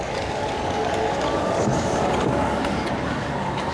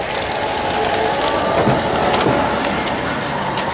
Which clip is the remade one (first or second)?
first